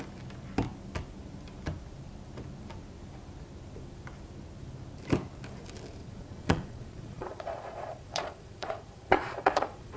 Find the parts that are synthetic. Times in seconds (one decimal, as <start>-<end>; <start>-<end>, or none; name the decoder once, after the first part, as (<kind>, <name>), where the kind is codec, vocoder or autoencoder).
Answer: 6.0-10.0 (vocoder, Vocos)

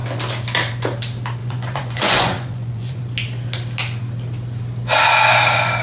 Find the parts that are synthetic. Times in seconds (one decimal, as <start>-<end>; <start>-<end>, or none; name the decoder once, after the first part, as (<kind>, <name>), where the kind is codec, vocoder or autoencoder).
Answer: 1.4-3.0 (vocoder, Vocos)

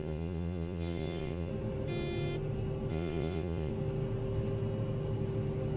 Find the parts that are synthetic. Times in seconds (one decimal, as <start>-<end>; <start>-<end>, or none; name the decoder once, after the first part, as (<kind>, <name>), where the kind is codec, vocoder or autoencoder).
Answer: 0.0-1.5 (vocoder, Vocos); 2.9-3.7

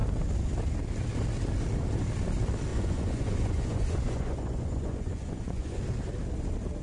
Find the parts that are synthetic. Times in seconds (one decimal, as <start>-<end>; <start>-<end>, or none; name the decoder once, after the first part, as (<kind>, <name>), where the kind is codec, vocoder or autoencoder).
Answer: 2.7-5.8 (vocoder, Vocos)